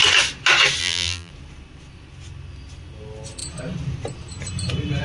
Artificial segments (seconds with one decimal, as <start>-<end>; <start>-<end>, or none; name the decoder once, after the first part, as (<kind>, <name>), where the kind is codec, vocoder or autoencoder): 0.8-1.3 (vocoder, BigVGAN v2)